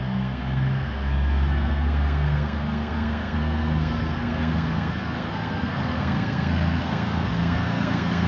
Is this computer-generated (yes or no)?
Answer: yes